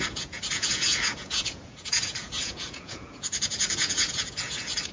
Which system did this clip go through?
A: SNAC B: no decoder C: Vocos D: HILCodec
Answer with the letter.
C